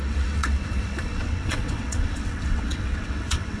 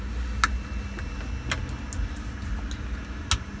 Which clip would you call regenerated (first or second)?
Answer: first